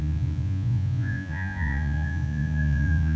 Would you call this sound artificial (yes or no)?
yes